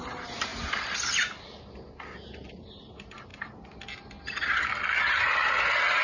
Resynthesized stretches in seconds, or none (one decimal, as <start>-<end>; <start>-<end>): none